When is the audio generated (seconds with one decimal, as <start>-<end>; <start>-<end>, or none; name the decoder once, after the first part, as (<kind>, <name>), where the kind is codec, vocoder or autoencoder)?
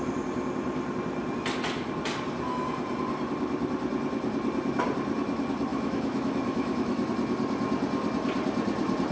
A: 5.7-7.1 (autoencoder, DAC-VAE)